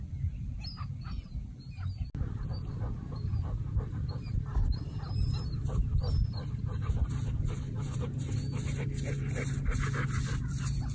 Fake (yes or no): no